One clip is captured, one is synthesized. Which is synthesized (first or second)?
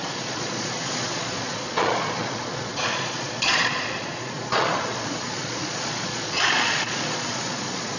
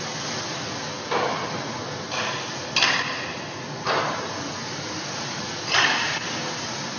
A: first